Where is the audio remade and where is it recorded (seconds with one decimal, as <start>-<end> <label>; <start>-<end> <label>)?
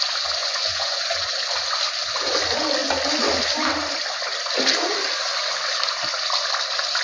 0.0-0.4 recorded; 0.4-1.3 remade; 1.3-7.0 recorded